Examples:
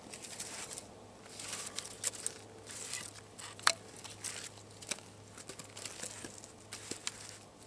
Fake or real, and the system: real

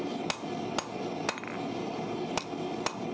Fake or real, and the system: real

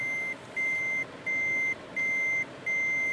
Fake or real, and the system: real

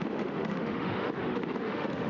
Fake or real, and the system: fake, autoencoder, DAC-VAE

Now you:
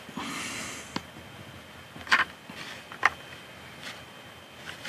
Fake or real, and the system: real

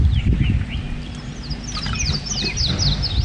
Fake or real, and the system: real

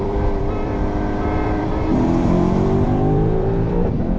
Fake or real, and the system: fake, vocoder, BigVGAN v2